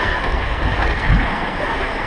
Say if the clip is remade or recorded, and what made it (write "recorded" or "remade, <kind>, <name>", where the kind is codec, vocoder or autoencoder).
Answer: remade, codec, SNAC